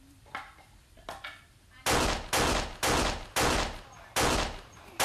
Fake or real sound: real